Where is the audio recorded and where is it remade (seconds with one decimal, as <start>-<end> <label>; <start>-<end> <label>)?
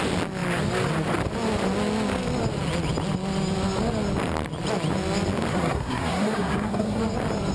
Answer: 0.0-5.5 recorded; 5.5-7.0 remade; 7.0-7.5 recorded